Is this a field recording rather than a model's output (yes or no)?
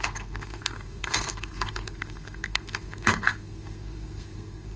no